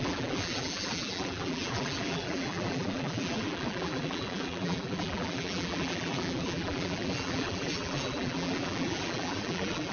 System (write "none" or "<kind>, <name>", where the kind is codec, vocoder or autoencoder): vocoder, BigVGAN v2